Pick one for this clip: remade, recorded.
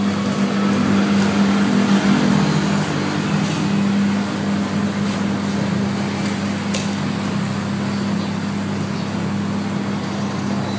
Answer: recorded